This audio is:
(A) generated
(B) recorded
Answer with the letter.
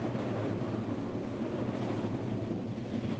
B